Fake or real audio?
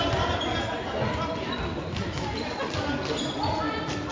real